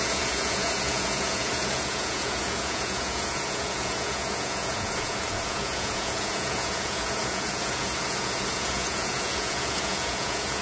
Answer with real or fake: fake